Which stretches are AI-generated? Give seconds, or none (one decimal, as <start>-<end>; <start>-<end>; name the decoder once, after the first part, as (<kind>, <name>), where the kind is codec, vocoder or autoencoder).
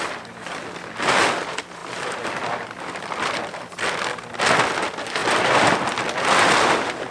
none